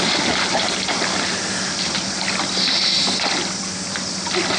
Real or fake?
real